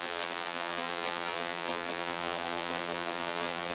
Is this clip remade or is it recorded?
remade